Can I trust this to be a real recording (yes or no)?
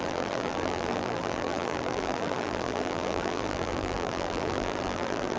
no